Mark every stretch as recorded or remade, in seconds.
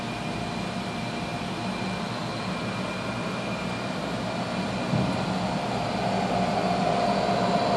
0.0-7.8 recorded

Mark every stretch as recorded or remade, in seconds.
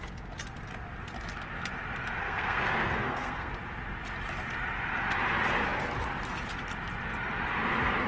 0.0-2.2 recorded; 2.2-3.5 remade; 3.5-8.1 recorded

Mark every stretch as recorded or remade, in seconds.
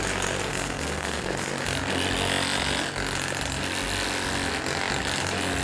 0.0-0.5 recorded; 0.5-1.5 remade; 1.5-5.6 recorded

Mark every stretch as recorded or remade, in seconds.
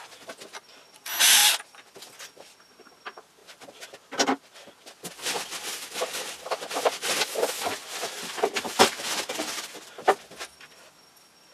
0.0-11.5 recorded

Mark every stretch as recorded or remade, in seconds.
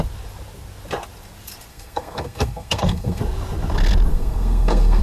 0.0-1.7 recorded; 1.7-3.2 remade; 3.2-4.1 recorded; 4.1-5.0 remade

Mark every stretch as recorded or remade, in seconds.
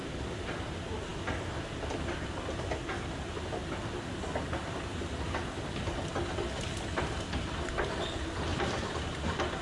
0.0-8.5 recorded; 8.5-9.2 remade; 9.2-9.6 recorded